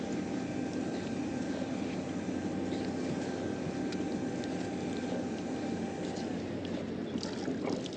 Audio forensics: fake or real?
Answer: real